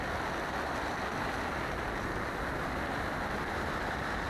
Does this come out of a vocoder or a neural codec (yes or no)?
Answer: no